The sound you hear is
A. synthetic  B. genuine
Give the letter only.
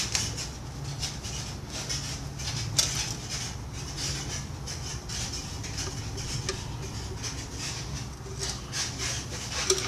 B